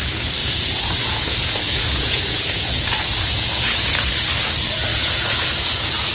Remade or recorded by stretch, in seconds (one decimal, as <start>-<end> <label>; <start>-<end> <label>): 0.0-0.4 recorded; 0.4-4.1 remade; 4.1-4.9 recorded; 4.9-6.1 remade